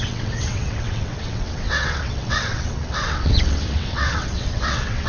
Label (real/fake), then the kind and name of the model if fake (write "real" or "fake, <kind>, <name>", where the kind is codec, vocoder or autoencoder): fake, vocoder, WaveNeXt